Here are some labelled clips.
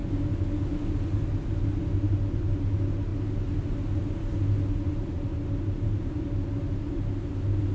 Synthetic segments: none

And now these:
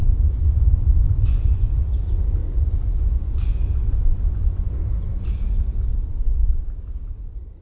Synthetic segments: 0.0-1.8 (vocoder, Vocos); 2.4-4.8

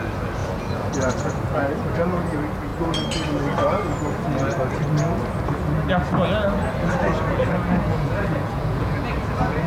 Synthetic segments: 0.4-1.3 (vocoder, Vocos); 7.9-9.0

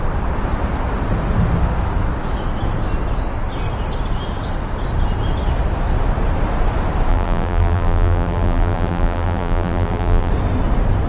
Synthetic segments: 7.1-10.3 (vocoder, BigVGAN v2)

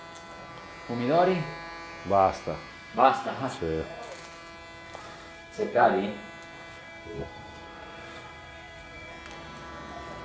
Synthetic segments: 2.7-3.4 (codec, SNAC); 5.0-5.9; 6.8-9.1